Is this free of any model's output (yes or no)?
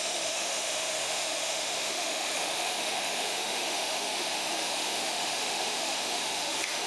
no